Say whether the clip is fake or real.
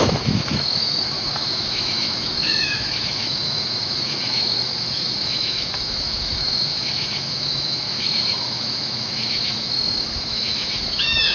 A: fake